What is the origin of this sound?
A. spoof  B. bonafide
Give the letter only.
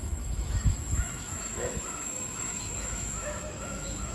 A